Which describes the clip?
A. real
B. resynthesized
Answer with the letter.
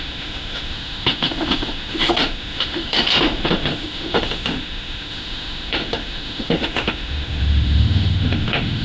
B